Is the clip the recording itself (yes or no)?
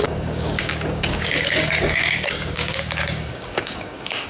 no